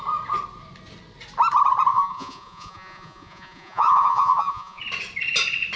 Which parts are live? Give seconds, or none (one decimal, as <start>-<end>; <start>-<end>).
0.0-1.9; 4.8-5.8